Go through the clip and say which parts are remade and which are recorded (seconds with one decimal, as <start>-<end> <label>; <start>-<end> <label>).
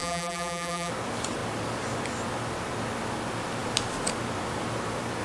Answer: 0.0-0.9 remade; 0.9-5.2 recorded